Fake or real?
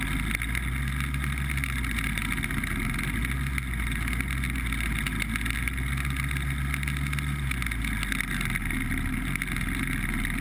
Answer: real